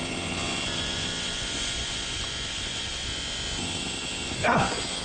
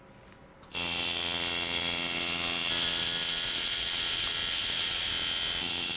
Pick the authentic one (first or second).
second